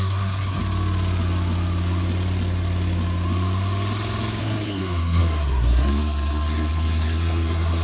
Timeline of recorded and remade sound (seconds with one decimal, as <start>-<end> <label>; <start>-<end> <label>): 0.0-0.6 remade; 0.6-4.4 recorded; 4.4-7.8 remade